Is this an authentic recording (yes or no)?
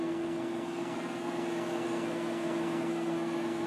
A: no